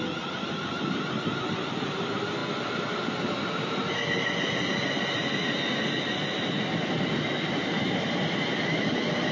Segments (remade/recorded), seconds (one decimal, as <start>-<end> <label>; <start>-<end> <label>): 0.0-9.3 recorded

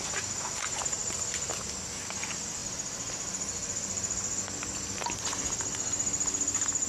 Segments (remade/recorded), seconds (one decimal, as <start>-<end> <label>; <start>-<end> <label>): 0.0-6.9 recorded

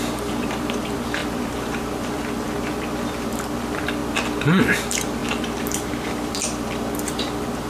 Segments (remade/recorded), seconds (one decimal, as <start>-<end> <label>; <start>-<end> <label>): 0.0-4.0 remade; 4.0-4.6 recorded; 4.6-7.7 remade

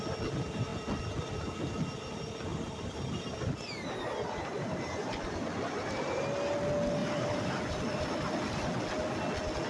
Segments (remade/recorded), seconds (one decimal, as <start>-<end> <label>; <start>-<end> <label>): 0.0-2.5 recorded; 2.5-6.2 remade; 6.2-7.0 recorded; 7.0-8.7 remade; 8.7-9.7 recorded

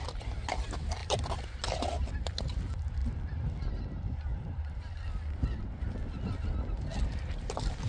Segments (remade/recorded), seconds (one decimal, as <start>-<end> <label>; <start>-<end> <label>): 0.0-1.0 recorded; 1.0-1.6 remade; 1.6-3.0 recorded; 3.0-5.6 remade; 5.6-7.9 recorded